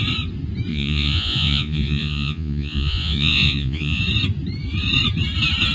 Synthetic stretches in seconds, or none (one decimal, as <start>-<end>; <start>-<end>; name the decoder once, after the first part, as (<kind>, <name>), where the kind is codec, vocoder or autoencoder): 0.7-4.0 (vocoder, Vocos)